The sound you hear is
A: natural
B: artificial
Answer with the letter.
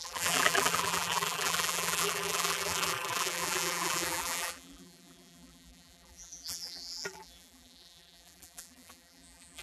B